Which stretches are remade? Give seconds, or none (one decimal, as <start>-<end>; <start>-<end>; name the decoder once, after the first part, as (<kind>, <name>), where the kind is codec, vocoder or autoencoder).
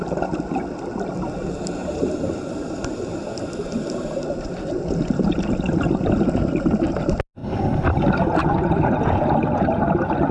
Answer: none